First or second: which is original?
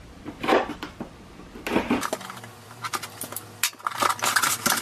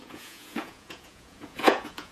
first